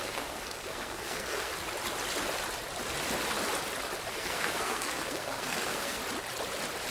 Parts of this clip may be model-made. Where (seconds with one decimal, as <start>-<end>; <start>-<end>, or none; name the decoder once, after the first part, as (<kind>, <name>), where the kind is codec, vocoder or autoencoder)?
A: 0.0-1.5 (codec, SNAC); 4.1-6.0